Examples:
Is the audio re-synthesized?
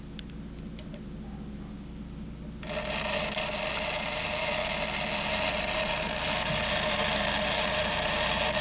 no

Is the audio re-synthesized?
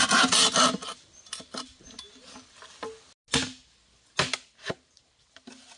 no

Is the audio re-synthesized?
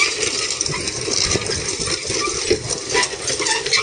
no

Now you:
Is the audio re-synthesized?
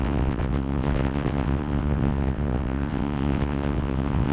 yes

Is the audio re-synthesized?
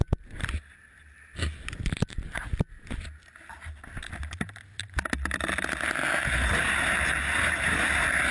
no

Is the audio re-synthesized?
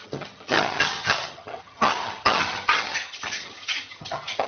yes